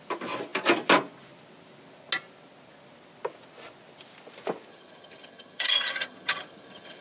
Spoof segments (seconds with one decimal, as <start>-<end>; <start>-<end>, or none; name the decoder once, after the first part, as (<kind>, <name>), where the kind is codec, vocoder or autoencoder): 4.7-7.0 (vocoder, HiFi-GAN)